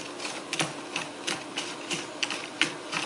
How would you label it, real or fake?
real